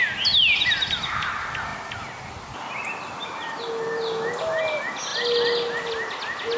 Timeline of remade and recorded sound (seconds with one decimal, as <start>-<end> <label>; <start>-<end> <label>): 0.0-6.6 recorded